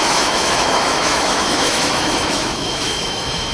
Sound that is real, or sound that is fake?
fake